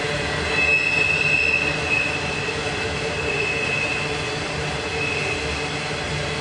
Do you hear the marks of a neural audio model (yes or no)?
no